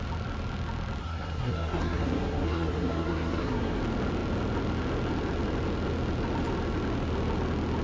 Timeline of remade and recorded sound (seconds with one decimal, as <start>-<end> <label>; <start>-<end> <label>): 0.0-1.0 recorded; 1.0-3.8 remade; 3.8-7.8 recorded